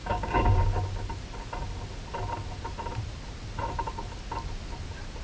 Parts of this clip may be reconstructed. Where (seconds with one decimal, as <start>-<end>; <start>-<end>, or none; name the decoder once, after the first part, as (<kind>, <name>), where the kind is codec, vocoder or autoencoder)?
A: 0.0-0.6 (codec, DAC)